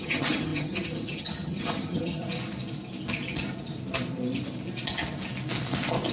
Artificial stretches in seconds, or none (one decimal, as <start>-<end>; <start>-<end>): 0.0-2.2